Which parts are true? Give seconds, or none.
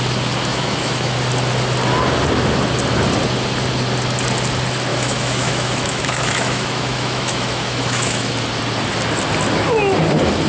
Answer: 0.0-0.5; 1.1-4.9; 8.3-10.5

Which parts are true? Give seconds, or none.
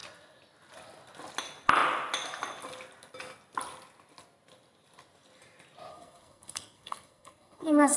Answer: 0.0-5.9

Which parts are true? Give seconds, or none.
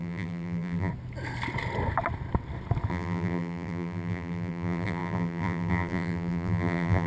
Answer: 0.9-2.9